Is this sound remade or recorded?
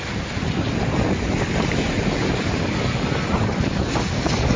recorded